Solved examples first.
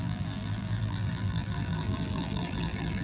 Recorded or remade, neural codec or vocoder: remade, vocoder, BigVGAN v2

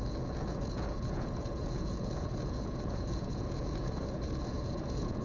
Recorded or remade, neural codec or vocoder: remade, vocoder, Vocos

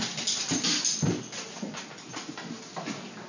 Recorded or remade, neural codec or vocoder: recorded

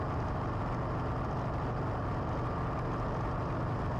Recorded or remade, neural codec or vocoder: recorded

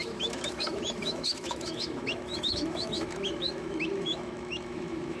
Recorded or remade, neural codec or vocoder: remade, autoencoder, DAC-VAE